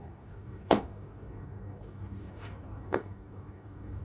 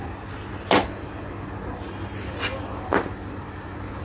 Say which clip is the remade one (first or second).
first